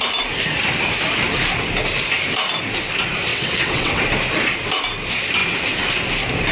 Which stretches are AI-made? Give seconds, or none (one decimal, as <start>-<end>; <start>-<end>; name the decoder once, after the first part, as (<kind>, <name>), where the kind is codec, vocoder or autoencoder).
3.3-4.0 (vocoder, WaveNeXt)